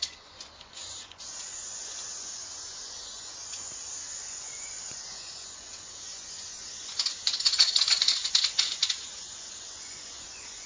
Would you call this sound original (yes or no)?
no